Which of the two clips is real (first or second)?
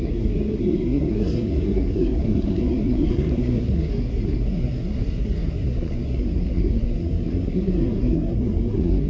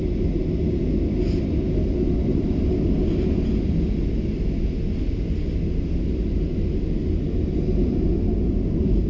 second